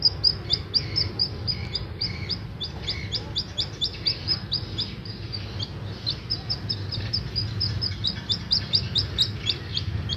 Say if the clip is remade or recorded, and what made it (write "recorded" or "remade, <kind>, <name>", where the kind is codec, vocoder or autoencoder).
recorded